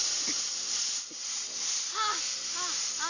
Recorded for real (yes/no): yes